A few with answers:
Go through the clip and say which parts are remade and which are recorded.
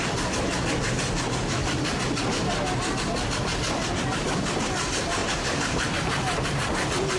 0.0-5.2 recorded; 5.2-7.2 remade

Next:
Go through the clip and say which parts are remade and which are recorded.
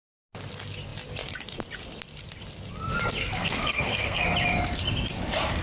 0.0-3.2 recorded; 3.2-4.2 remade; 4.2-5.6 recorded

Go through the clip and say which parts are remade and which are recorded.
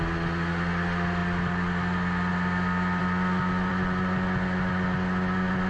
0.0-5.7 recorded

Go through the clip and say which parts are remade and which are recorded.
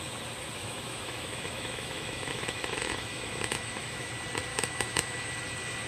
0.0-0.6 recorded; 0.6-4.1 remade; 4.1-4.5 recorded; 4.5-5.3 remade; 5.3-5.9 recorded